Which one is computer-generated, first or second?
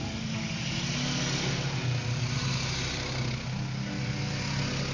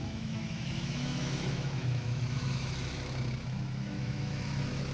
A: second